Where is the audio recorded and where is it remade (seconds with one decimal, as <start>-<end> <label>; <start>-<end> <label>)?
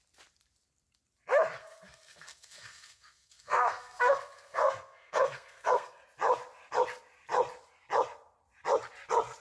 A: 0.0-1.6 recorded; 1.6-6.0 remade; 6.0-9.4 recorded